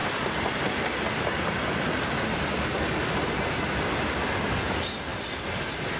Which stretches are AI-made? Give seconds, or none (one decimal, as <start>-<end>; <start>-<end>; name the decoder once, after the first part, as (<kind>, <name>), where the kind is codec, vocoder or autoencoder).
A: none